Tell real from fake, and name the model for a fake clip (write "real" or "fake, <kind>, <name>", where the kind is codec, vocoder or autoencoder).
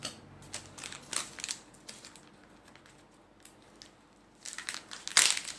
real